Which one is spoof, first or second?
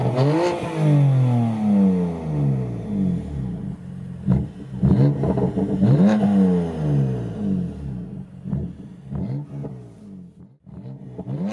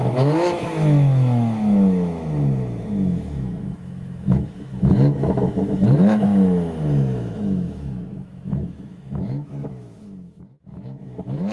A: second